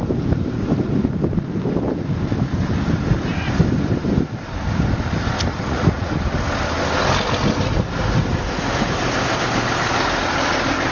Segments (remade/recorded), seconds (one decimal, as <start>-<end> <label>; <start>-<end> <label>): 0.0-5.5 recorded; 5.5-6.2 remade; 6.2-10.9 recorded